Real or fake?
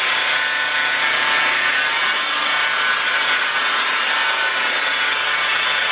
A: real